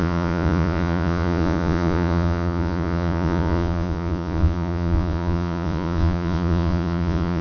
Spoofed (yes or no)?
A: yes